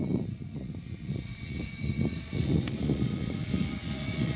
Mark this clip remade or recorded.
remade